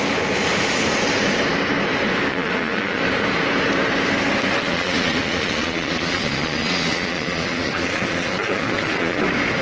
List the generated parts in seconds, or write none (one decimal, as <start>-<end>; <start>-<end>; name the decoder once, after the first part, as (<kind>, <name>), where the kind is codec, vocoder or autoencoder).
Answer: 2.3-3.0 (vocoder, Vocos); 4.6-9.2